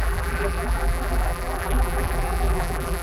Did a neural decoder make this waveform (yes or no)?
yes